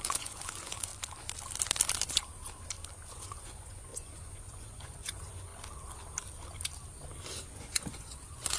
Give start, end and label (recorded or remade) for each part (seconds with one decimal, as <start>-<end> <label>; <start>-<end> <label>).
0.0-0.9 remade; 0.9-3.1 recorded; 3.1-5.5 remade; 5.5-7.4 recorded; 7.4-8.6 remade